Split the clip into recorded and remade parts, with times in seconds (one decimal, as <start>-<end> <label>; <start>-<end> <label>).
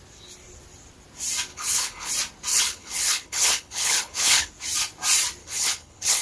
0.0-1.5 recorded; 1.5-2.1 remade; 2.1-2.5 recorded; 2.5-4.5 remade; 4.5-5.4 recorded; 5.4-6.2 remade